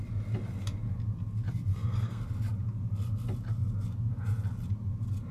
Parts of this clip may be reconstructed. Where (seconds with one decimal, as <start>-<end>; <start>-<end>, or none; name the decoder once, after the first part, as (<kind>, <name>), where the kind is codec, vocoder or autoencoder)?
1.7-2.2 (codec, SNAC)